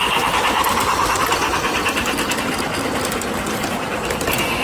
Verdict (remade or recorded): recorded